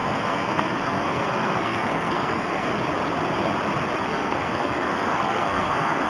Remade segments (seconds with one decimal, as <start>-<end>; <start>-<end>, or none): 0.0-2.7; 4.0-6.1